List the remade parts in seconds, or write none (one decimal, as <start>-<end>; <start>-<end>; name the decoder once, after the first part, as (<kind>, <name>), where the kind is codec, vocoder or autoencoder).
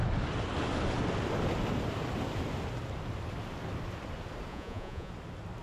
4.5-5.1 (vocoder, Vocos)